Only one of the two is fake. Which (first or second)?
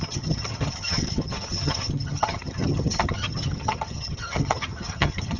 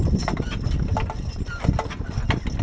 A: first